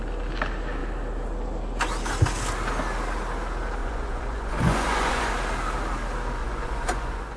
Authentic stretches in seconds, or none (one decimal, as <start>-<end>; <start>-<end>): 0.0-3.8; 5.3-6.4